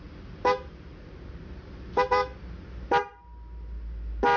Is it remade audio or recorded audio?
recorded